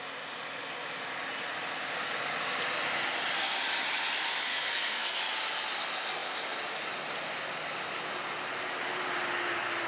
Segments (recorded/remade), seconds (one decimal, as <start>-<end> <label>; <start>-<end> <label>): 0.0-4.5 recorded; 4.5-5.2 remade; 5.2-9.9 recorded